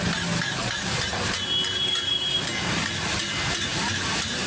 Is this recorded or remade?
recorded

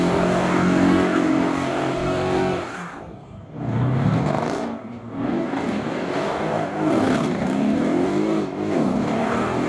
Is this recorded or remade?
remade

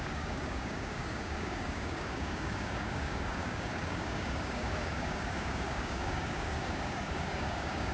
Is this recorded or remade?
remade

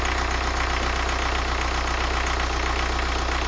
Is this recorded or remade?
recorded